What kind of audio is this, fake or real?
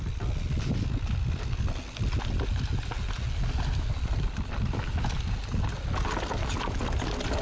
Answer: real